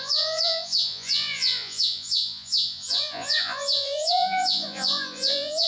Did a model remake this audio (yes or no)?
yes